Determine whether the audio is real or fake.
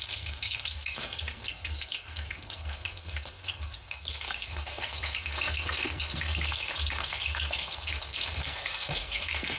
fake